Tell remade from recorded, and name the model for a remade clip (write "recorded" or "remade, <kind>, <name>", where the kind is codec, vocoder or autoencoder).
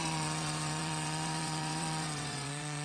remade, vocoder, WaveNeXt